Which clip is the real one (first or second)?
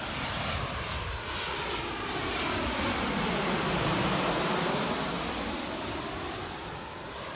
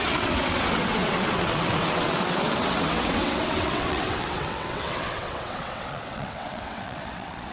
first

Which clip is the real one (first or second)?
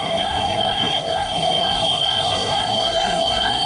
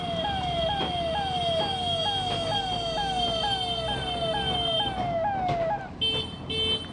second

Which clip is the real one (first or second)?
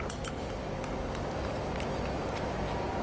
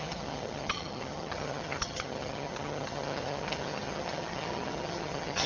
first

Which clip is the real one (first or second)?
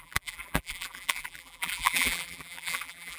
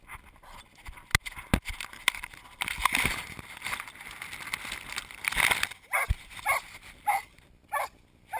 second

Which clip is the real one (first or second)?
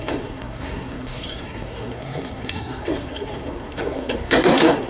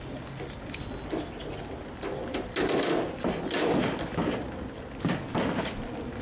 second